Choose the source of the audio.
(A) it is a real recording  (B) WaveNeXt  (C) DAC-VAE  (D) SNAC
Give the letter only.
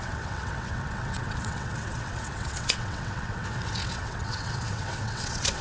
B